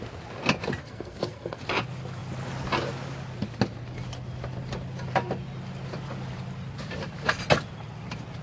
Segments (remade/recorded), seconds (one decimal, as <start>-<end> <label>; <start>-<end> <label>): 0.0-0.8 recorded; 0.8-1.6 remade; 1.6-8.4 recorded